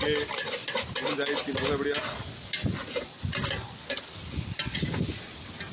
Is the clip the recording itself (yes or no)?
yes